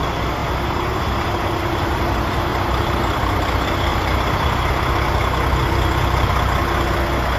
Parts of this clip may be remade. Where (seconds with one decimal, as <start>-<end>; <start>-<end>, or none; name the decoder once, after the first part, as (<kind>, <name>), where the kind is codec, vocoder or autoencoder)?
0.4-2.0 (vocoder, BigVGAN v2); 2.5-3.0; 3.9-4.7